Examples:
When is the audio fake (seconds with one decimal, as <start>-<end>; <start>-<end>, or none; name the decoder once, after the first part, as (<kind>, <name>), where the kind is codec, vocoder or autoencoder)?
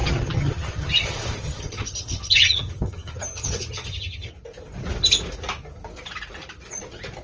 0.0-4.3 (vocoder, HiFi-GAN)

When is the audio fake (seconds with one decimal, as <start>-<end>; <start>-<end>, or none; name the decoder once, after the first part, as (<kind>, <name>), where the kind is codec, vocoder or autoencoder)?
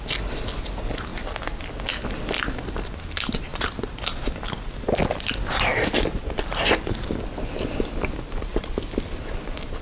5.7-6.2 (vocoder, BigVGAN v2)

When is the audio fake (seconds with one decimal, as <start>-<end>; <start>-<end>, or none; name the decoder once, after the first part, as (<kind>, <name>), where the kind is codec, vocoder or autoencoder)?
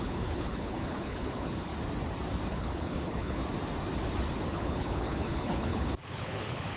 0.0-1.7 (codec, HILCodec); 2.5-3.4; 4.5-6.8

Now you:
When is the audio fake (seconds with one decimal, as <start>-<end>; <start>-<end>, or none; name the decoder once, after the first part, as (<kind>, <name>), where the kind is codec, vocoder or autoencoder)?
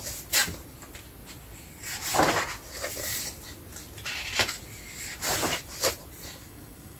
6.4-7.0 (codec, SNAC)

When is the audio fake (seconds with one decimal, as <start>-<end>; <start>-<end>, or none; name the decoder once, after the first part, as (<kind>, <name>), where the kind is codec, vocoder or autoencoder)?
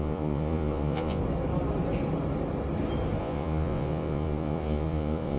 0.0-1.2 (vocoder, Vocos); 3.2-5.4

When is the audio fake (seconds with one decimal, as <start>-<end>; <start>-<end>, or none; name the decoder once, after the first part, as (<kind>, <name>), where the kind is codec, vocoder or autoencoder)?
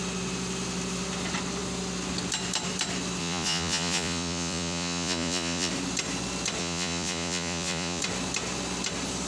3.2-5.7 (vocoder, Vocos); 6.6-8.0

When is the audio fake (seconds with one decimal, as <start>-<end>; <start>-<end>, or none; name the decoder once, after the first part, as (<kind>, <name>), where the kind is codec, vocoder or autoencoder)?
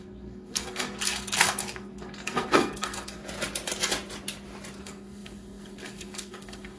0.0-3.2 (codec, SNAC); 4.8-6.8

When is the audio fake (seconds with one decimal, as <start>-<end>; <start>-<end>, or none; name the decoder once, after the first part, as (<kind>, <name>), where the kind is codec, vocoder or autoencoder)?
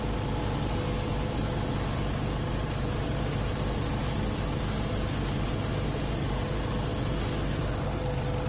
none